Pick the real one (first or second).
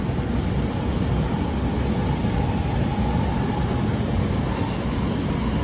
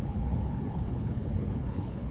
first